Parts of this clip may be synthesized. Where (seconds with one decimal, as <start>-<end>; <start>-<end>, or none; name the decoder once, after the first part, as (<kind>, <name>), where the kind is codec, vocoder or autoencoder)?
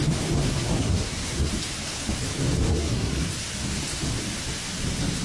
0.4-1.5 (codec, SNAC); 2.7-3.3